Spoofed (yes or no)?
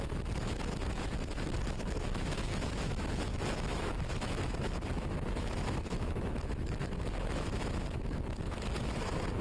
yes